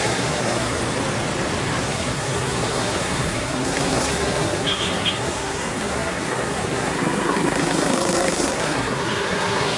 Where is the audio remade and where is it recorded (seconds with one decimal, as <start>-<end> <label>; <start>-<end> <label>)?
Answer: 0.0-0.8 remade; 0.8-1.8 recorded; 1.8-9.8 remade